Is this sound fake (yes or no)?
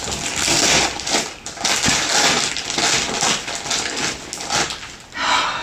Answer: no